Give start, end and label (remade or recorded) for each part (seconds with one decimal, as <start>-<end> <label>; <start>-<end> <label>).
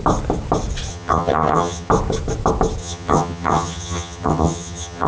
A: 0.0-0.9 recorded; 0.9-1.9 remade; 1.9-2.8 recorded; 2.8-5.1 remade